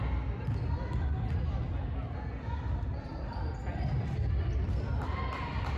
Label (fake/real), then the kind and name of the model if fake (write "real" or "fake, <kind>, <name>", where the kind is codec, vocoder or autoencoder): real